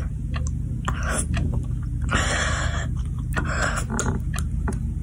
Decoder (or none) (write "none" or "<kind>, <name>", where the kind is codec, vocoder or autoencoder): none